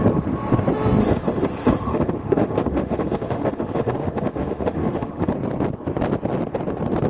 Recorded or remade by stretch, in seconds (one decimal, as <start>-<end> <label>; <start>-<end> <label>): 0.0-1.0 recorded; 1.0-5.3 remade; 5.3-7.1 recorded